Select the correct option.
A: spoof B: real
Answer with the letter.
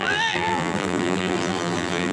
A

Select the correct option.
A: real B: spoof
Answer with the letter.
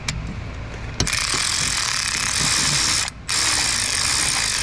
A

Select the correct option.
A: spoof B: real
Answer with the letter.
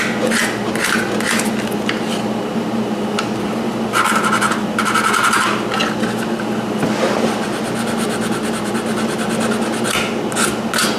B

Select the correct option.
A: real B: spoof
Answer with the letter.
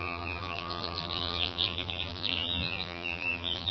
B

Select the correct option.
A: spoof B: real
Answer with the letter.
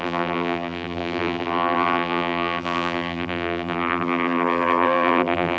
A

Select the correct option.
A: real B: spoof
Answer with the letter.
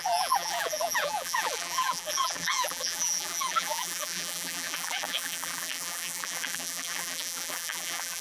B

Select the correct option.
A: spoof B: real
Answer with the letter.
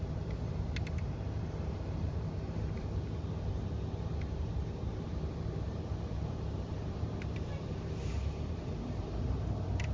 A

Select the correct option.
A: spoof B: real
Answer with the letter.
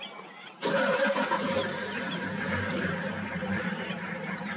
A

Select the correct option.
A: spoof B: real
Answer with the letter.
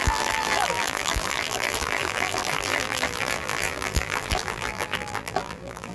A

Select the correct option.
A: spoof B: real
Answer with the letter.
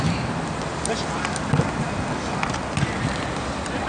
B